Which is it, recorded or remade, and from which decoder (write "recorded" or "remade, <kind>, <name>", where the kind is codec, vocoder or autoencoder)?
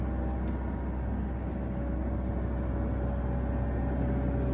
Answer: recorded